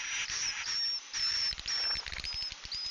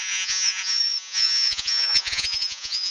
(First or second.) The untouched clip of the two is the first